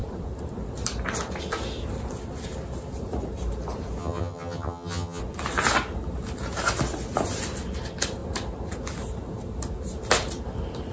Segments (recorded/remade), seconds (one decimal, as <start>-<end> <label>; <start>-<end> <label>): 0.0-4.0 recorded; 4.0-5.2 remade; 5.2-10.9 recorded